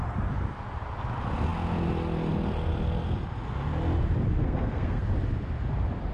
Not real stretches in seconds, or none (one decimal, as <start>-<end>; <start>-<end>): 4.4-5.0